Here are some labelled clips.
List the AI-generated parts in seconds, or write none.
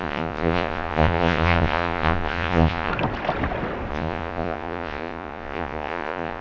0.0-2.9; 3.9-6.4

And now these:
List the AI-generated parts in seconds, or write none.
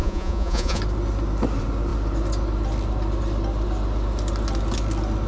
0.0-0.8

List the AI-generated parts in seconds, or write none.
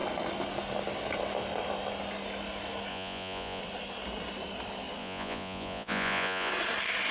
2.9-3.6; 5.0-6.5